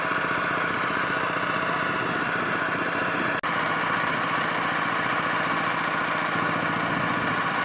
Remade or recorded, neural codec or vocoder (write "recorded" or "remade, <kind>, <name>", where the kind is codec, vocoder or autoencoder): recorded